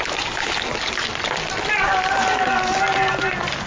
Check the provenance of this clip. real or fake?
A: real